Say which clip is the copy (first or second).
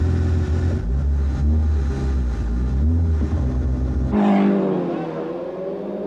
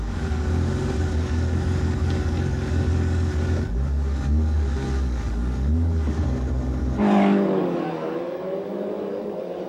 second